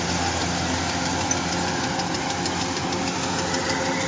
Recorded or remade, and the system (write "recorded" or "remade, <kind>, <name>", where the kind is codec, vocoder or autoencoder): recorded